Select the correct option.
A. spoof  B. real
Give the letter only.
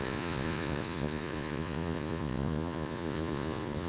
A